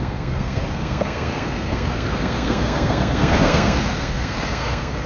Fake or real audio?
fake